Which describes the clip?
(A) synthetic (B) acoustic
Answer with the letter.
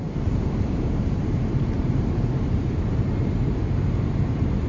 A